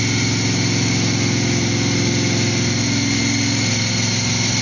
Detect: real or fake real